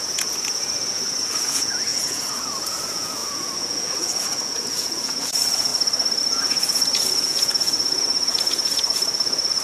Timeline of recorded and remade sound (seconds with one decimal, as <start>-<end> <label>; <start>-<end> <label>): 0.0-5.7 remade; 5.7-6.2 recorded; 6.2-9.6 remade